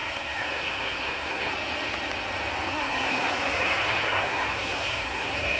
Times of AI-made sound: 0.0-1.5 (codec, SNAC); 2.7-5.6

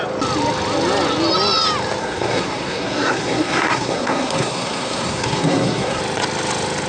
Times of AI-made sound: 2.0-6.0 (codec, SNAC)

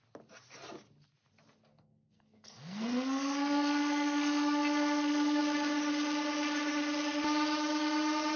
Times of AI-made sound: 1.7-5.4 (codec, SNAC)

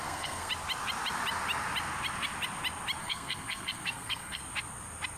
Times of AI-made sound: 0.0-0.5 (codec, SNAC); 3.0-4.4

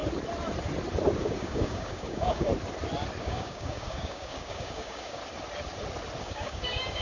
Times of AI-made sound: 1.2-2.5 (codec, DAC); 3.2-5.2; 6.2-7.0